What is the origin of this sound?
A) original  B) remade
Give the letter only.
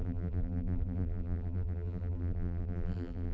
B